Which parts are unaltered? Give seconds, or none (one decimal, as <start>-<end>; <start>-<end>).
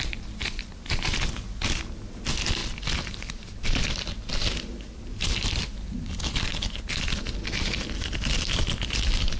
0.0-9.4